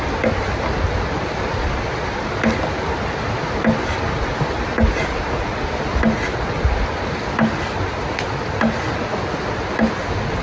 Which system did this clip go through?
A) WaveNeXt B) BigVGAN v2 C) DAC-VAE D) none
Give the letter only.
D